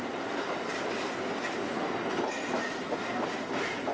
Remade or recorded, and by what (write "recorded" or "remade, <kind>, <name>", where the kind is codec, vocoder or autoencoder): recorded